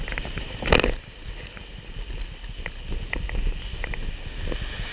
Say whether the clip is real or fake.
real